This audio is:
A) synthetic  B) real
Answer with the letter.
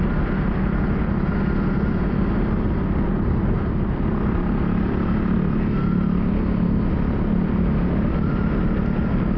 B